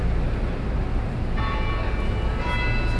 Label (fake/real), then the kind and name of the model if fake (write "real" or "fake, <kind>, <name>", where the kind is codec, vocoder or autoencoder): real